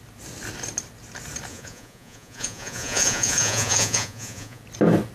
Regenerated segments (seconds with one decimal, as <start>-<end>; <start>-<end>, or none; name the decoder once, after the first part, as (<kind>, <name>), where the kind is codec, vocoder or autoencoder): 1.5-4.6 (vocoder, Vocos)